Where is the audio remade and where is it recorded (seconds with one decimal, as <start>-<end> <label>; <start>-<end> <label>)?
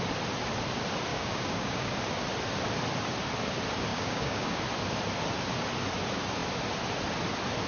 0.0-1.1 recorded; 1.1-1.9 remade; 1.9-3.9 recorded; 3.9-4.6 remade; 4.6-7.7 recorded